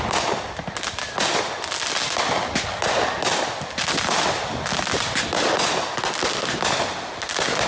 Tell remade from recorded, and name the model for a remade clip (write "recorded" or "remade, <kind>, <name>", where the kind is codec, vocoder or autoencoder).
recorded